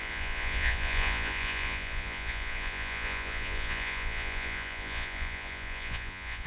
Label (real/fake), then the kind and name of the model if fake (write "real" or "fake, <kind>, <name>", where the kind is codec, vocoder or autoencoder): fake, vocoder, Vocos